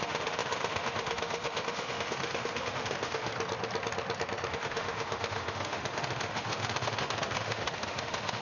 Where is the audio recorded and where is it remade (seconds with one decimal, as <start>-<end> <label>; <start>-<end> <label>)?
0.0-3.3 remade; 3.3-4.5 recorded; 4.5-8.4 remade